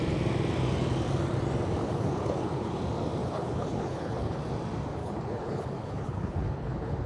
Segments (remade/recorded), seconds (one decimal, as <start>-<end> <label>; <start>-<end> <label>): 0.0-1.8 recorded; 1.8-2.8 remade; 2.8-3.2 recorded; 3.2-4.4 remade; 4.4-5.0 recorded; 5.0-7.1 remade